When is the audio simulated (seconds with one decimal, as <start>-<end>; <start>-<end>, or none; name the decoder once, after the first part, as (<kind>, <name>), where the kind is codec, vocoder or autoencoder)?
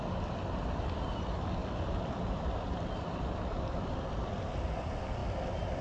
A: 1.6-4.3 (vocoder, BigVGAN v2)